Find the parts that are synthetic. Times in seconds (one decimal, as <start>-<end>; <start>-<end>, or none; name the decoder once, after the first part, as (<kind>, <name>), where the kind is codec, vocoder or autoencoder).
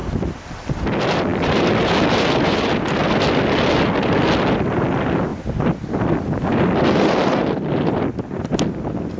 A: 0.0-0.5 (vocoder, BigVGAN v2); 1.3-3.1; 5.3-7.9